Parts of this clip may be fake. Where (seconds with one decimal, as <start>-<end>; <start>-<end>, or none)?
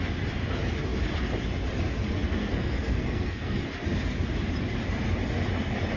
2.4-3.6